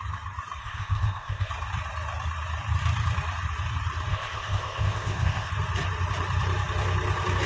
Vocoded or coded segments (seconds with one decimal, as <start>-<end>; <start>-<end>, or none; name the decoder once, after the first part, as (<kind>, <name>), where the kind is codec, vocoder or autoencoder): 0.6-1.5 (codec, ZipCodec); 4.1-5.5